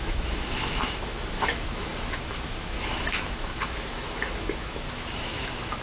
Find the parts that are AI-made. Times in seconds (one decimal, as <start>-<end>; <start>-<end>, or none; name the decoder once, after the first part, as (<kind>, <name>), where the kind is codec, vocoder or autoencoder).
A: 0.0-5.8 (autoencoder, DAC-VAE)

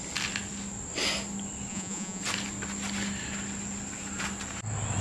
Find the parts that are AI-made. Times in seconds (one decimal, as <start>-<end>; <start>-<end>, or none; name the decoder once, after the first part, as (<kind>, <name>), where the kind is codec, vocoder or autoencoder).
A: 1.7-2.2 (vocoder, Vocos)